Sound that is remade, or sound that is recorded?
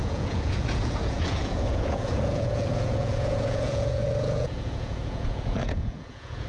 remade